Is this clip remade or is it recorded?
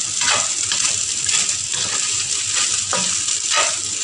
recorded